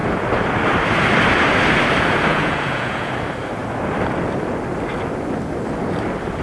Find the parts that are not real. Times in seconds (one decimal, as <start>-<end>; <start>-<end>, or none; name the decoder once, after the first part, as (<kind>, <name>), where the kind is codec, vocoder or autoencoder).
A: 2.3-3.1 (vocoder, Vocos)